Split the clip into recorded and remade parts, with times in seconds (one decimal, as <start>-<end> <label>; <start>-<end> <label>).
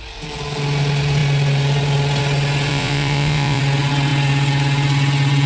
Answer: 0.0-2.7 recorded; 2.7-3.6 remade; 3.6-5.5 recorded